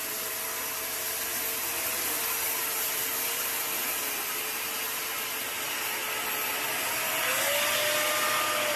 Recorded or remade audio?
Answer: recorded